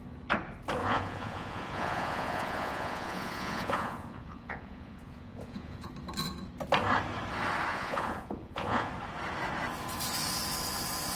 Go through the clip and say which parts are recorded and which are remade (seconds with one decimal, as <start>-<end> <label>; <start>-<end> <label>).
0.0-0.8 recorded; 0.8-5.9 remade; 5.9-7.7 recorded; 7.7-8.9 remade; 8.9-11.2 recorded